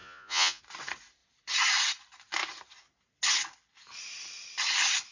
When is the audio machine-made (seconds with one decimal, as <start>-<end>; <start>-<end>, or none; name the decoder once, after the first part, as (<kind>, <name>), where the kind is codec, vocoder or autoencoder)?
0.0-0.6 (vocoder, Vocos)